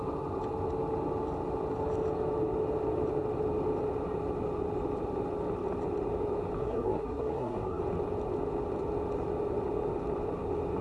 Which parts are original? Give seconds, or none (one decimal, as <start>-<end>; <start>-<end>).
0.0-6.6; 7.8-10.8